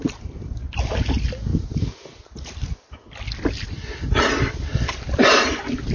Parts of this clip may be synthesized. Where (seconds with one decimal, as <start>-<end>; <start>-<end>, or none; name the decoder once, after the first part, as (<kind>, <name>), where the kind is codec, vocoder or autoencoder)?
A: none